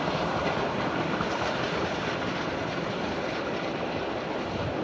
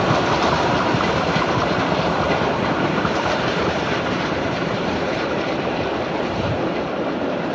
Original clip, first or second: first